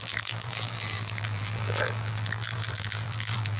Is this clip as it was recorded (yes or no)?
no